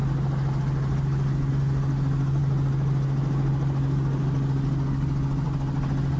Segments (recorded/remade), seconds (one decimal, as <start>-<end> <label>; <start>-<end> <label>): 0.0-6.2 recorded